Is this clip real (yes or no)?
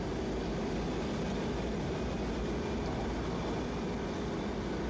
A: yes